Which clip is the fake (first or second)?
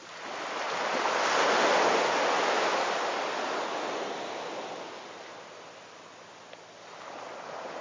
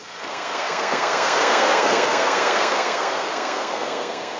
second